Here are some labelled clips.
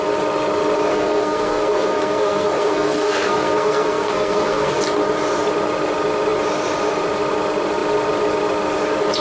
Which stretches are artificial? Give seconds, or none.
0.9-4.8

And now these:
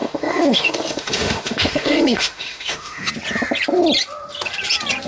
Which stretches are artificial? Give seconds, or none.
0.0-3.1

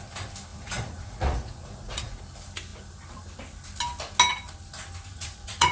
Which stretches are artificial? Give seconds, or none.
0.5-2.2; 5.1-5.7

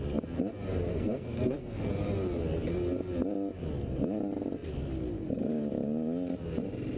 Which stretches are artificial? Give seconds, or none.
0.9-1.9

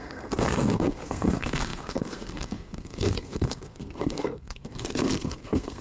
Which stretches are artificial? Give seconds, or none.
0.0-5.8